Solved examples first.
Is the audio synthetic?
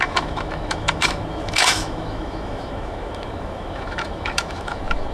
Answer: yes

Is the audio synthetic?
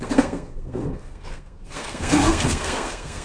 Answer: yes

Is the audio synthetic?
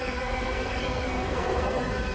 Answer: yes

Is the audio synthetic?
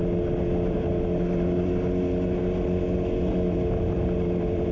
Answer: no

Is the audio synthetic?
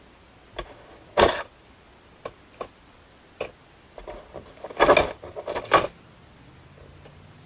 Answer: no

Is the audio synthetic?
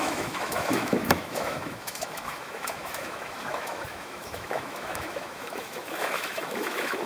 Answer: yes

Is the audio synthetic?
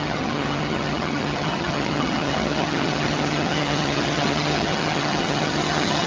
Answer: yes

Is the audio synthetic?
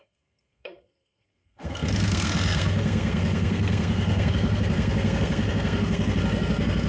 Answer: yes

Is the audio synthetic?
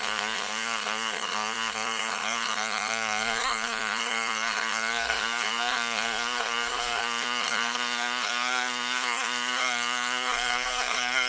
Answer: yes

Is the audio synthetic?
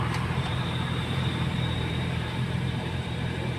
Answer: yes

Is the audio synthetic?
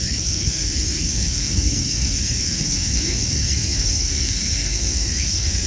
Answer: yes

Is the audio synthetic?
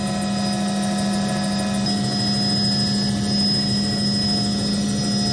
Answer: no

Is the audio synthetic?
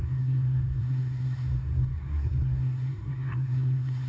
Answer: yes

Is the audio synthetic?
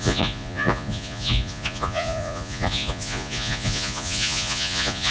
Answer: yes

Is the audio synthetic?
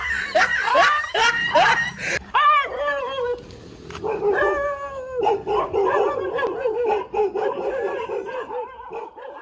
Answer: yes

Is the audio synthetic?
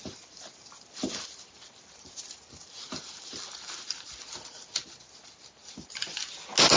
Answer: no